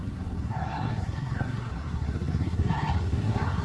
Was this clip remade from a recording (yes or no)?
yes